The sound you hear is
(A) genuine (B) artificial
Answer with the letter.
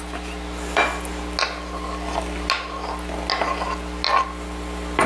A